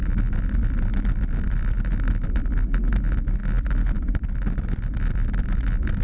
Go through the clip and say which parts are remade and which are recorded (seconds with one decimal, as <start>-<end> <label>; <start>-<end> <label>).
0.0-6.0 recorded

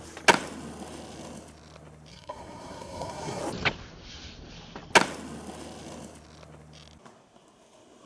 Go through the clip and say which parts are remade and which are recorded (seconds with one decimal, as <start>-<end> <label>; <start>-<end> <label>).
0.0-2.1 recorded; 2.1-3.4 remade; 3.4-8.1 recorded

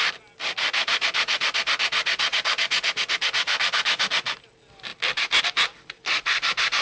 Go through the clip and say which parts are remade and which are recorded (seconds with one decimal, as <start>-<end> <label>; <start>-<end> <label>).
0.0-6.8 recorded

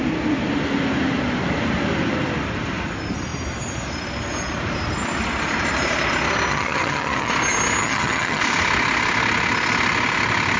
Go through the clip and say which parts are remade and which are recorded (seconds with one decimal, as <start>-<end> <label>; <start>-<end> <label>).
0.0-6.5 recorded; 6.5-7.3 remade; 7.3-7.8 recorded; 7.8-8.4 remade; 8.4-10.6 recorded

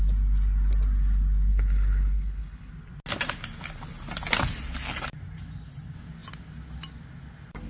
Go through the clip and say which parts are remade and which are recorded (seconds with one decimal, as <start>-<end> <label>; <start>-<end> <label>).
0.0-1.5 recorded; 1.5-2.7 remade; 2.7-7.7 recorded

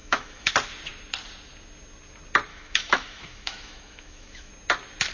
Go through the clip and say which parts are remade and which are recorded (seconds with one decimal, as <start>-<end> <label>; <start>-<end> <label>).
0.0-0.5 remade; 0.5-2.5 recorded; 2.5-4.5 remade; 4.5-5.1 recorded

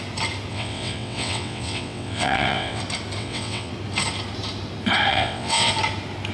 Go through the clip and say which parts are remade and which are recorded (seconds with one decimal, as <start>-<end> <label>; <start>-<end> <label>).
0.0-0.5 recorded; 0.5-2.8 remade; 2.8-3.2 recorded; 3.2-3.7 remade; 3.7-5.1 recorded; 5.1-5.7 remade; 5.7-6.3 recorded